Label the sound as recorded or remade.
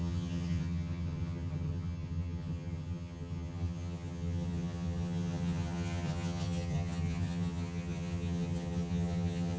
remade